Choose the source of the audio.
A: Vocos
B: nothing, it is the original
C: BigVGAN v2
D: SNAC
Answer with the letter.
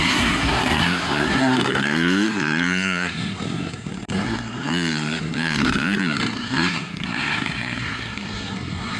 D